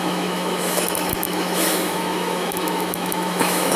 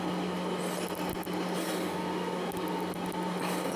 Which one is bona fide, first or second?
second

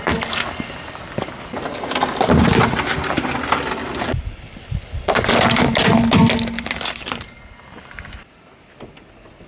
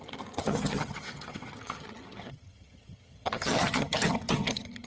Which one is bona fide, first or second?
first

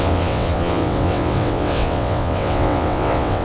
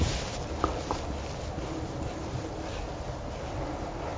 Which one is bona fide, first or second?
second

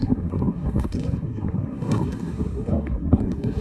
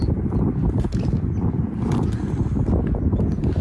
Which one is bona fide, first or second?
second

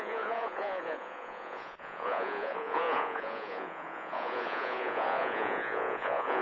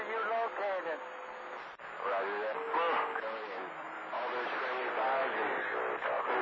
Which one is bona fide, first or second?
second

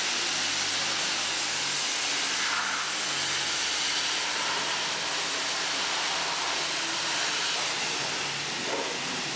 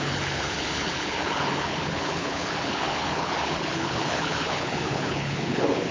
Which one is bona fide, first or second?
first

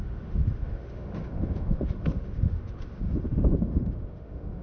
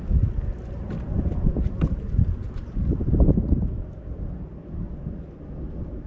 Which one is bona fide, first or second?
second